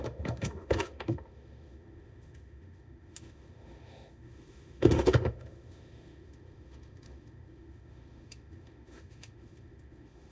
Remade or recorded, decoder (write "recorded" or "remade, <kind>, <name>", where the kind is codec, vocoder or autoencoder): remade, autoencoder, DAC-VAE